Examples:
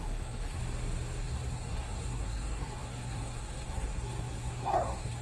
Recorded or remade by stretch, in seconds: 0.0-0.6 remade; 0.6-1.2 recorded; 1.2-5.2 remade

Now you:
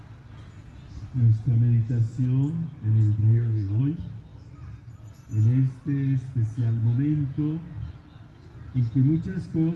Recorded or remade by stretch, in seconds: 0.0-3.2 recorded; 3.2-3.8 remade; 3.8-9.8 recorded

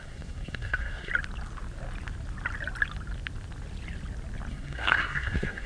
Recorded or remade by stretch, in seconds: 0.0-1.1 remade; 1.1-4.5 recorded; 4.5-5.7 remade

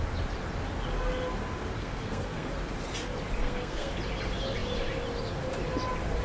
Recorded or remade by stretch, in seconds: 0.0-1.8 recorded; 1.8-2.5 remade; 2.5-3.4 recorded; 3.4-3.9 remade; 3.9-6.2 recorded